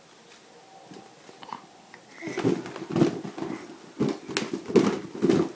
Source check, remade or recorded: recorded